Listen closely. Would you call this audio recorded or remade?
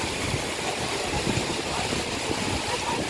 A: recorded